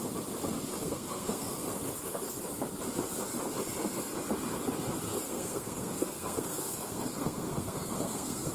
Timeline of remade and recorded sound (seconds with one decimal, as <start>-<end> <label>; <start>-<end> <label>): 0.0-0.8 recorded; 0.8-1.7 remade; 1.7-5.1 recorded; 5.1-8.5 remade